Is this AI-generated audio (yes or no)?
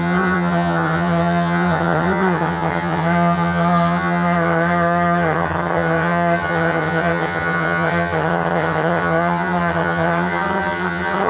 yes